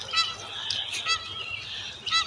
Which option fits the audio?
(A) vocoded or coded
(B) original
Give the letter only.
B